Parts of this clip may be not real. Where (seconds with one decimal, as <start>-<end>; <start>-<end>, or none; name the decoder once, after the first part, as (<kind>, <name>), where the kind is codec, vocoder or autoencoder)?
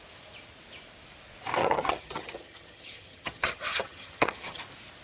1.6-4.6 (vocoder, HiFi-GAN)